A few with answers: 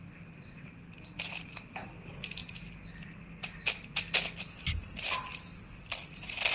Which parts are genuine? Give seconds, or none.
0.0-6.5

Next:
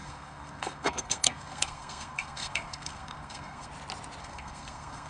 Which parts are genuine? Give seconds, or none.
3.7-4.2

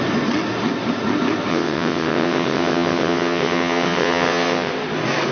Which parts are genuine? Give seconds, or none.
0.0-1.5; 4.7-5.3

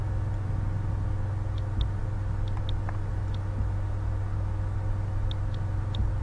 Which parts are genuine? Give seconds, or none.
0.0-6.2

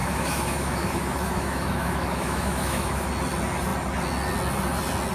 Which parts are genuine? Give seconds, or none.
3.1-5.1